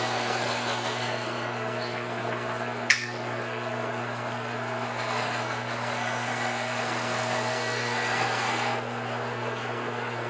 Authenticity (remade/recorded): remade